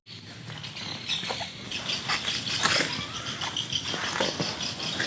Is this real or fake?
real